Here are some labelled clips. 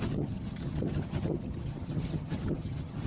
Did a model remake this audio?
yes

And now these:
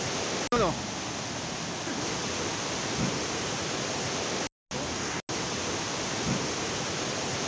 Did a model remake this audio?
no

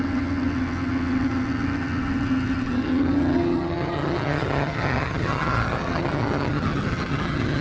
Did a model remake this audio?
yes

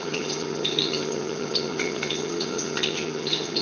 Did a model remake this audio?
yes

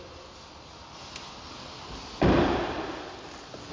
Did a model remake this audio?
no